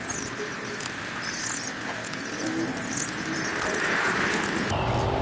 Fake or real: real